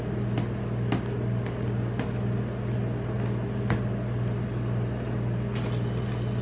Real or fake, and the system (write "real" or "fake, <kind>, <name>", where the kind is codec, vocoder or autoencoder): real